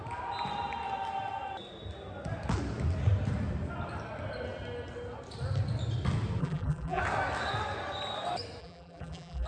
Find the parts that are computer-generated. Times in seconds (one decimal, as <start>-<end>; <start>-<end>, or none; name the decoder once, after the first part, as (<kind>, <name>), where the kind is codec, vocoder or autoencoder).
6.4-7.0 (vocoder, BigVGAN v2); 8.6-9.5